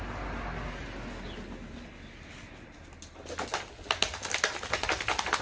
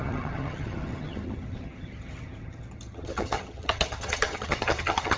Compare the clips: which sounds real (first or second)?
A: first